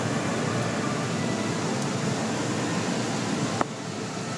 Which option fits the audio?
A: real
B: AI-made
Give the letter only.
A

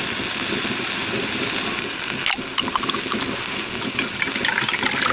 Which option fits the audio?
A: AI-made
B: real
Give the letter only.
B